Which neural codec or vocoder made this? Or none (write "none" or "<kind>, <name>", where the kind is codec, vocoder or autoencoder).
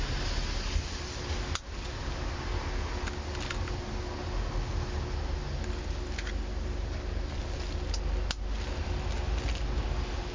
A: none